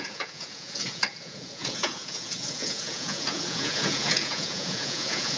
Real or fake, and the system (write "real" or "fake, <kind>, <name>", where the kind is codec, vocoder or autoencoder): fake, vocoder, Vocos